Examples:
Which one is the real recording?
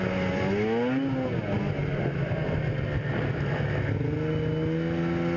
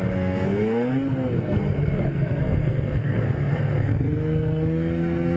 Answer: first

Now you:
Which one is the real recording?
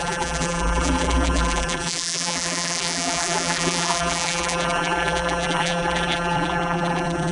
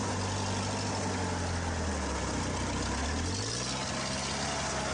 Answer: second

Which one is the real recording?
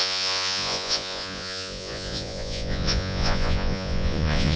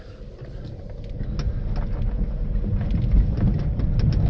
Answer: second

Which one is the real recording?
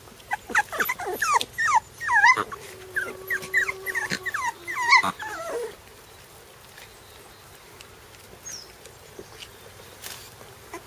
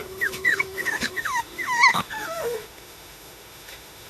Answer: first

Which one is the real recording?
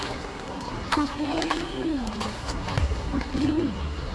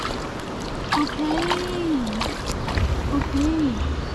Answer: second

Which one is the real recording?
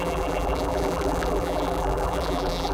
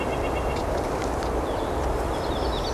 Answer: second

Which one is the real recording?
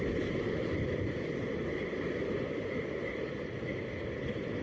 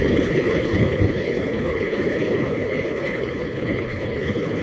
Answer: first